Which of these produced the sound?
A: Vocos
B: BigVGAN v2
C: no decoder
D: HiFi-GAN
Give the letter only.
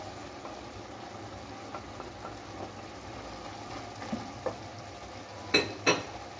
C